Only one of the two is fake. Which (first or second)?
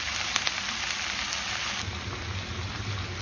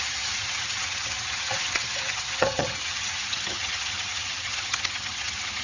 second